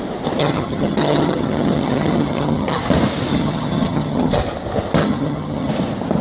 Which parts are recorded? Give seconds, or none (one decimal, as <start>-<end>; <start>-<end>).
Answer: 0.0-0.4; 2.8-3.3; 4.3-5.0; 5.7-6.2